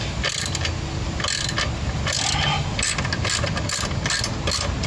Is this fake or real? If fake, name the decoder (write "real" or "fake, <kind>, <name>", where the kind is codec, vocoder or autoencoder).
real